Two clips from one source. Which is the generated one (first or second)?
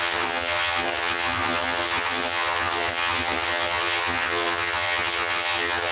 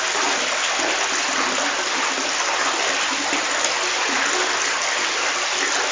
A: first